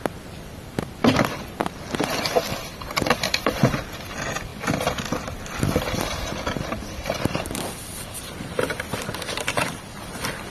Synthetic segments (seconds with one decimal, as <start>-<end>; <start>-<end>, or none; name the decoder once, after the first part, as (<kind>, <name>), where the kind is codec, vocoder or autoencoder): 0.0-4.5 (vocoder, BigVGAN v2); 5.4-10.5